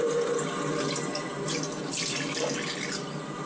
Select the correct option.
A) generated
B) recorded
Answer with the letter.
B